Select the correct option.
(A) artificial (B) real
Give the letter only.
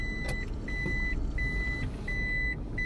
B